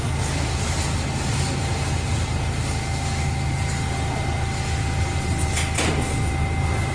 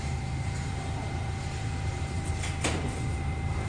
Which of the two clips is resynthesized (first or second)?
second